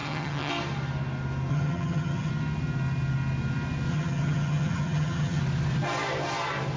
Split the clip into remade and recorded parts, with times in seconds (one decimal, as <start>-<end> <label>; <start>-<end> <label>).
0.0-0.5 remade; 0.5-1.5 recorded; 1.5-2.3 remade; 2.3-3.9 recorded; 3.9-5.4 remade; 5.4-6.8 recorded

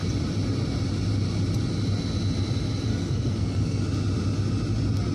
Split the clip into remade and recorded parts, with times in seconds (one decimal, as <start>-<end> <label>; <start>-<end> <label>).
0.0-2.9 recorded; 2.9-3.8 remade; 3.8-5.1 recorded